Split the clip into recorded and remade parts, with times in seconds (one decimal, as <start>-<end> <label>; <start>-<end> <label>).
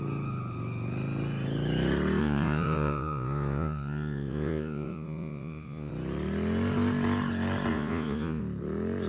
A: 0.0-2.2 recorded; 2.2-5.9 remade; 5.9-7.7 recorded; 7.7-8.4 remade; 8.4-9.1 recorded